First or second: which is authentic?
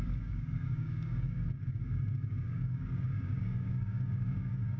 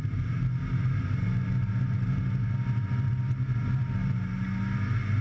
second